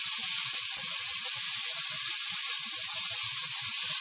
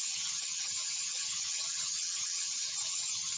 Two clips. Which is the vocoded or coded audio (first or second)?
second